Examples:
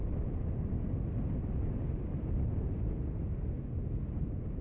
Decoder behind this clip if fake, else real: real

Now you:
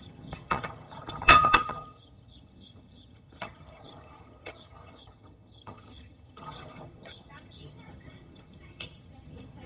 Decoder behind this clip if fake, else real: fake, vocoder, HiFi-GAN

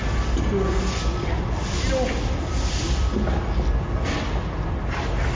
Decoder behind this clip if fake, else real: real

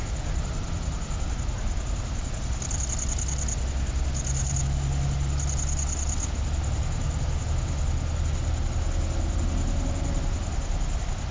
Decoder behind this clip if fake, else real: real